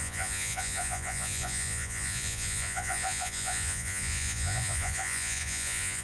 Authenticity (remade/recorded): remade